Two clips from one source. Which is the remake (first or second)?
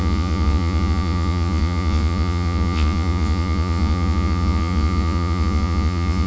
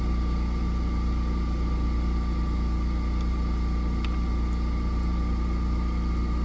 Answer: first